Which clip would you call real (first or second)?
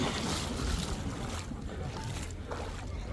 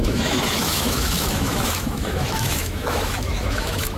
first